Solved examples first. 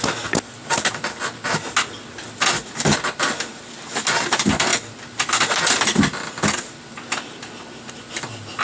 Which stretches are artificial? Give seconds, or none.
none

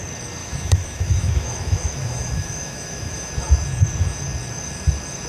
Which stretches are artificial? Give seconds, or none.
0.4-3.3 (autoencoder, DAC-VAE)